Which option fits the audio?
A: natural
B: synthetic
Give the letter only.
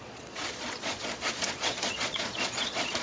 B